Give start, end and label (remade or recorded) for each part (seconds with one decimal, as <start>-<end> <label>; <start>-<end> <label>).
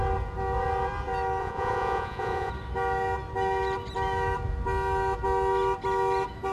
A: 0.0-1.4 recorded; 1.4-2.5 remade; 2.5-6.5 recorded